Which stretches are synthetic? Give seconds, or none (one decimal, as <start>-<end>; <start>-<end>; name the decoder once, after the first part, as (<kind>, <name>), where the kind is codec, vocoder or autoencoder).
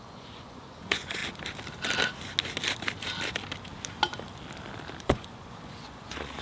0.0-1.2 (vocoder, Vocos); 5.0-6.4